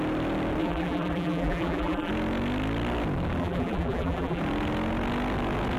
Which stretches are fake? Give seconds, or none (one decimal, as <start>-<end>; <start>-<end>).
0.6-2.1; 3.4-4.4